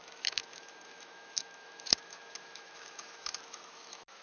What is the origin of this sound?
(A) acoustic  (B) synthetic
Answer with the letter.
B